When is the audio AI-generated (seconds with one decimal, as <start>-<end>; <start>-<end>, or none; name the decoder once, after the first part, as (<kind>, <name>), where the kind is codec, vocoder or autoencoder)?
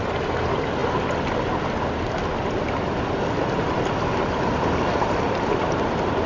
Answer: none